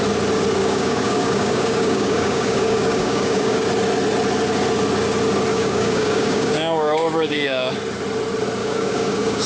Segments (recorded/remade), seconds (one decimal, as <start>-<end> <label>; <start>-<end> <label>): 0.0-0.6 recorded; 0.6-3.6 remade; 3.6-5.5 recorded; 5.5-7.7 remade; 7.7-8.6 recorded; 8.6-9.5 remade